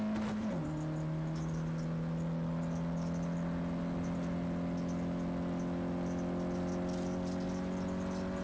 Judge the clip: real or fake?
real